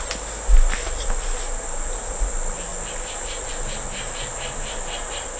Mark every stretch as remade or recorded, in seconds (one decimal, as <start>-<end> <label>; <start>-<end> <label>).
0.0-5.4 recorded